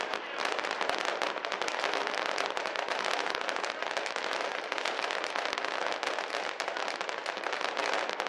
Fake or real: real